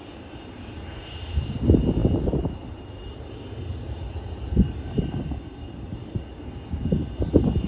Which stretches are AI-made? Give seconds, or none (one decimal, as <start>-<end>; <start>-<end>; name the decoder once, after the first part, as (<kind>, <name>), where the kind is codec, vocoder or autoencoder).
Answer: none